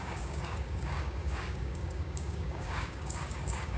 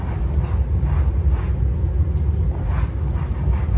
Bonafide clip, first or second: second